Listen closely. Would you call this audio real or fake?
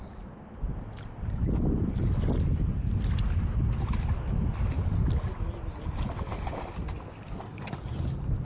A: real